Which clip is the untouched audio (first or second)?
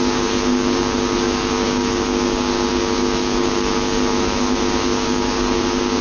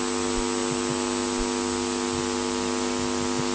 second